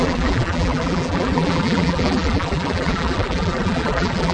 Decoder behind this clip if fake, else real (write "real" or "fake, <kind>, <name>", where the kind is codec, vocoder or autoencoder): fake, vocoder, BigVGAN v2